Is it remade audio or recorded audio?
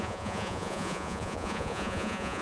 remade